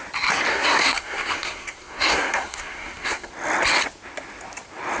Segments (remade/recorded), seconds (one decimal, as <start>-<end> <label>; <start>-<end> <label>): 0.0-0.5 recorded; 0.5-3.3 remade; 3.3-5.0 recorded